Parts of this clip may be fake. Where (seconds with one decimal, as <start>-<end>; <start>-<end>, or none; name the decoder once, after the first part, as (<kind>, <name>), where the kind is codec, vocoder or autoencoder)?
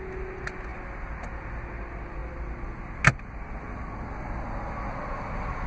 none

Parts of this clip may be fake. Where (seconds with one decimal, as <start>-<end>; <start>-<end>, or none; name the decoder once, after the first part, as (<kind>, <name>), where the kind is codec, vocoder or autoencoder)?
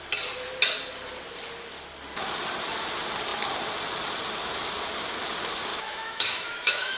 5.7-7.0 (autoencoder, DAC-VAE)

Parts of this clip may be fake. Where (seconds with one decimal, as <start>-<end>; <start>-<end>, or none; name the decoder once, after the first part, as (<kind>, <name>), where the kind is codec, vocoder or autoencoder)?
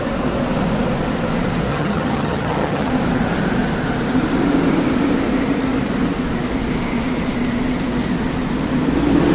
1.7-2.9 (vocoder, HiFi-GAN)